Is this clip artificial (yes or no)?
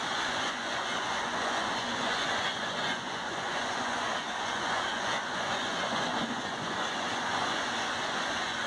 yes